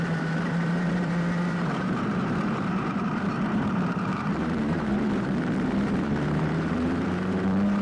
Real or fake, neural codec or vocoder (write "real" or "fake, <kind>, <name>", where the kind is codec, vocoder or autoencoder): fake, vocoder, BigVGAN v2